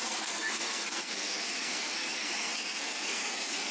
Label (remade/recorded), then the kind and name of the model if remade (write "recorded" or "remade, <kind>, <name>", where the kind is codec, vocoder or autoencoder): remade, codec, SNAC